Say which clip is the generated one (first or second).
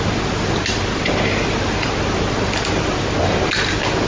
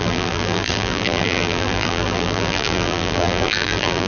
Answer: second